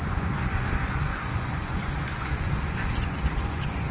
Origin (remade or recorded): remade